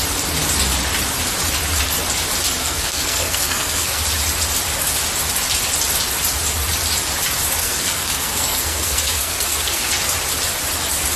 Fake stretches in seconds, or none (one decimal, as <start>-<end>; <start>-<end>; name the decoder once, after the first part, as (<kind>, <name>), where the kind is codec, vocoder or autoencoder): 2.6-4.0 (codec, SNAC); 7.6-10.0